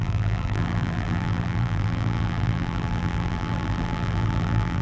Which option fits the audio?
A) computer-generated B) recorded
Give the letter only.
A